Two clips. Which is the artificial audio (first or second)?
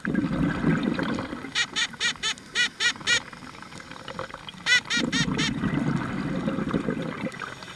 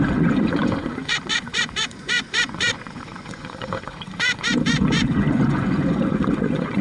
second